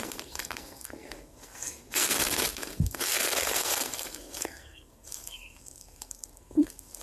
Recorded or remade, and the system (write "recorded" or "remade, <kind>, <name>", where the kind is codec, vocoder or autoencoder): remade, codec, SNAC